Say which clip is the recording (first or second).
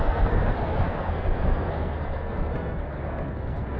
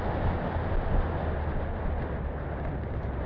second